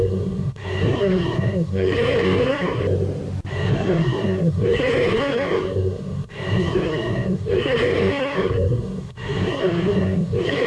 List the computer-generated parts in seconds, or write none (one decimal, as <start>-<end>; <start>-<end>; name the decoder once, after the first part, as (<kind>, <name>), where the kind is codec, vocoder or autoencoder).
0.0-2.8 (codec, SNAC); 3.5-10.7